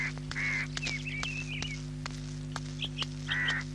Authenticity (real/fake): real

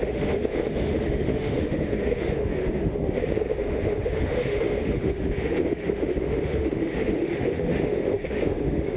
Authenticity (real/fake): fake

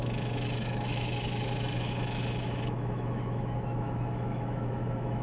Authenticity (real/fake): fake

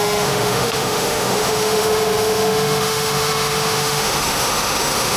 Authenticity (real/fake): fake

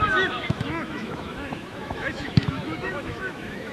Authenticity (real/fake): fake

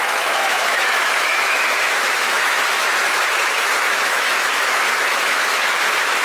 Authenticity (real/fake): fake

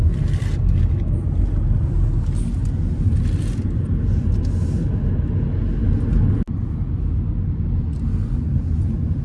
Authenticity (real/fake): real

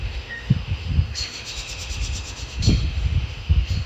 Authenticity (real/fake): fake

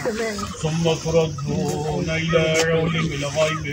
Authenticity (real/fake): real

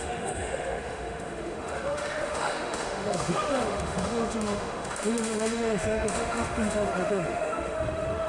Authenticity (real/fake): fake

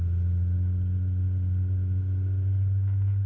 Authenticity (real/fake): real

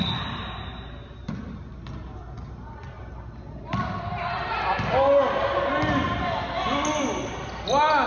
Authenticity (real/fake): real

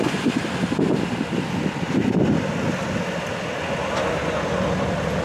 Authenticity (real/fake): real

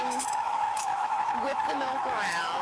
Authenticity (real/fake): fake